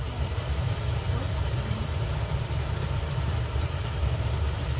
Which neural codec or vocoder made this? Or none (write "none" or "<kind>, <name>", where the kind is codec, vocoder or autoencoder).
vocoder, BigVGAN v2